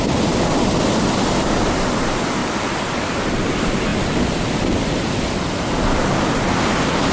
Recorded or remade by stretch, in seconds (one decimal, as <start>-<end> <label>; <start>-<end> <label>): 0.0-2.4 recorded; 2.4-3.0 remade; 3.0-7.1 recorded